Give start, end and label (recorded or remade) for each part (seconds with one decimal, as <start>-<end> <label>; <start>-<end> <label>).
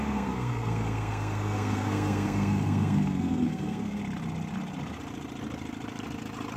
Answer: 0.0-4.0 remade; 4.0-6.6 recorded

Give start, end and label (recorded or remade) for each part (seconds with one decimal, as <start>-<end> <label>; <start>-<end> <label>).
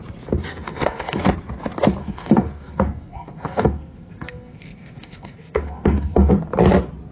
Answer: 0.0-0.5 recorded; 0.5-1.3 remade; 1.3-2.0 recorded; 2.0-6.3 remade; 6.3-7.1 recorded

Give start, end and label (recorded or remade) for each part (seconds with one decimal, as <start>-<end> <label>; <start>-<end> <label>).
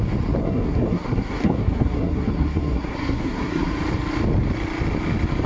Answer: 0.0-0.4 recorded; 0.4-3.7 remade; 3.7-5.5 recorded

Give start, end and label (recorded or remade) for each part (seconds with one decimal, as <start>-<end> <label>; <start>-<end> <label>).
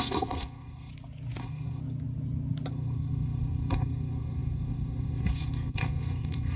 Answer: 0.0-0.9 remade; 0.9-1.4 recorded; 1.4-1.8 remade; 1.8-2.7 recorded; 2.7-6.6 remade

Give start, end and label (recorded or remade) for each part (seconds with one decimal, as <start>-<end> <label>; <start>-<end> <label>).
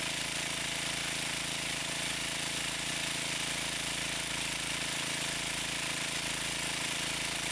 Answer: 0.0-7.5 recorded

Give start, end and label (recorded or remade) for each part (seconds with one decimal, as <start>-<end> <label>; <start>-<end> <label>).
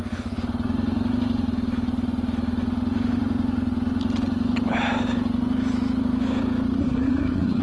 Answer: 0.0-6.8 recorded; 6.8-7.6 remade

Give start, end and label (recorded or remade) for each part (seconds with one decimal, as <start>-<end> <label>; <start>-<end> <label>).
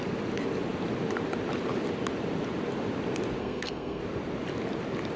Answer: 0.0-3.4 recorded; 3.4-4.0 remade; 4.0-5.2 recorded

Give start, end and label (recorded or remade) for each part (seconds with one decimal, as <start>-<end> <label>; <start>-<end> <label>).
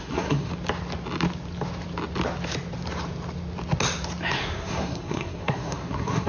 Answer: 0.0-0.5 remade; 0.5-4.3 recorded; 4.3-6.3 remade